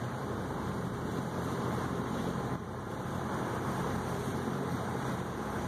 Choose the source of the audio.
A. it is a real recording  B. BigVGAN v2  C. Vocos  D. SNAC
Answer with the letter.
B